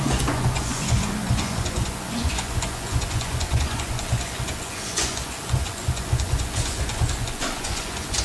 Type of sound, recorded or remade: remade